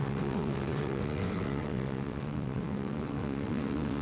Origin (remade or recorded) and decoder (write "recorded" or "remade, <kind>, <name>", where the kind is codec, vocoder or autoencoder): remade, vocoder, WaveNeXt